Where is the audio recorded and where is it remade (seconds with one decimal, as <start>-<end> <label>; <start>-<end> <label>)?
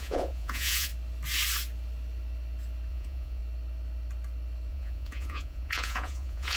0.0-0.9 remade; 0.9-2.9 recorded; 2.9-3.4 remade; 3.4-4.7 recorded; 4.7-6.6 remade